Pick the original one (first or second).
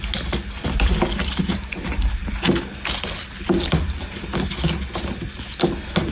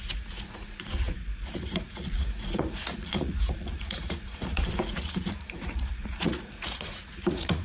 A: first